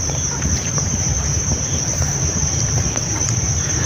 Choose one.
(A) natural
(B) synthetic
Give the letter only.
B